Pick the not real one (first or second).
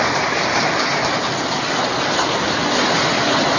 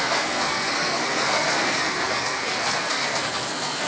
second